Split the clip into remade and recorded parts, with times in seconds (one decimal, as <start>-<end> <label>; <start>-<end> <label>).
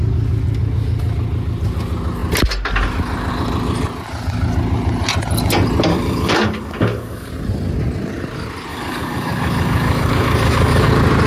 0.0-5.9 recorded; 5.9-7.3 remade; 7.3-8.7 recorded; 8.7-10.9 remade; 10.9-11.3 recorded